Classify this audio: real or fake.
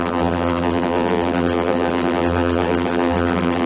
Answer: fake